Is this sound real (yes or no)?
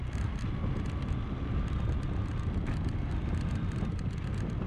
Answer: yes